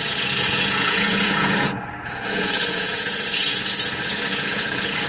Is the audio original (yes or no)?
no